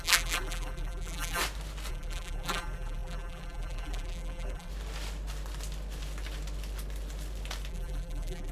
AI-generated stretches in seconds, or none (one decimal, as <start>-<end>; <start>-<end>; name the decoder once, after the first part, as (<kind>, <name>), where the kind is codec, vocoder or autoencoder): 0.0-1.4 (vocoder, BigVGAN v2); 1.9-4.7; 7.7-8.5